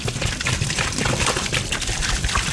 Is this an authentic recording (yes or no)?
yes